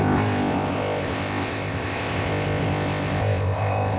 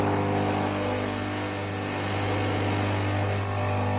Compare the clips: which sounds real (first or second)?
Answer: second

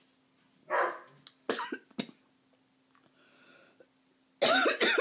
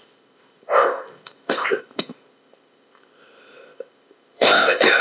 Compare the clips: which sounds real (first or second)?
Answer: first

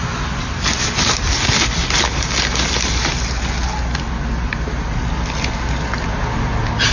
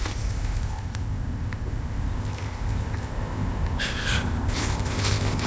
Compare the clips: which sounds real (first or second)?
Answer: first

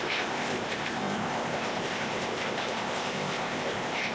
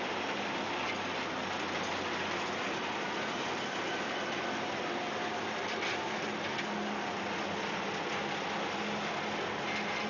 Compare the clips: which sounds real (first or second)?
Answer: second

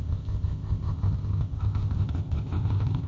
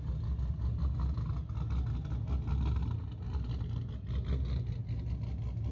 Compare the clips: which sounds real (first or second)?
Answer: second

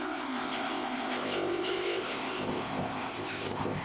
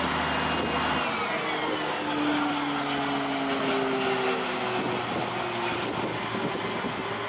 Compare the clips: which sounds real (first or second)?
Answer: second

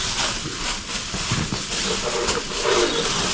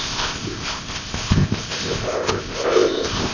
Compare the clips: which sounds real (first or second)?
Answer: first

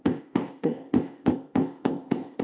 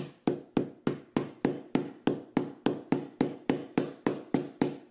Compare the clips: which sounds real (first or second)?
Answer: second